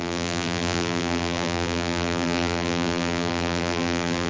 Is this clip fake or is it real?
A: fake